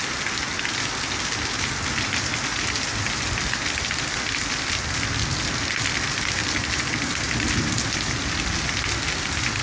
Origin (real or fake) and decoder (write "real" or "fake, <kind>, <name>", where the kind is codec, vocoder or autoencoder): real